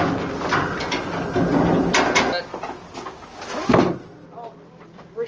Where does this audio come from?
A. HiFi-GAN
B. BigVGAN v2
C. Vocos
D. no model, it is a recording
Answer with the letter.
D